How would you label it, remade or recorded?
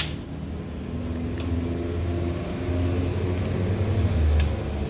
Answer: recorded